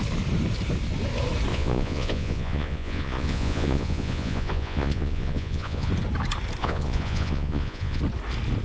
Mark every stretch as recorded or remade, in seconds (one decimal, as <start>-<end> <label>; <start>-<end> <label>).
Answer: 0.0-1.5 recorded; 1.5-5.9 remade; 5.9-6.6 recorded; 6.6-8.0 remade; 8.0-8.6 recorded